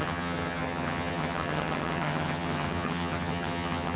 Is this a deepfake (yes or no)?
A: yes